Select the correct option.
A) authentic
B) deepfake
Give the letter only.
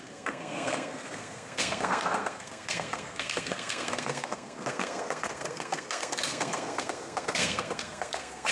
B